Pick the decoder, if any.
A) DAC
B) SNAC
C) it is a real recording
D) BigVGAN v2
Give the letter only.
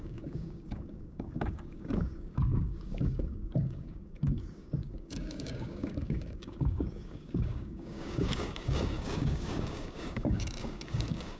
A